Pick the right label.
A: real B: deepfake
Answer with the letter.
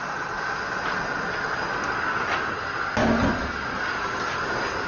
A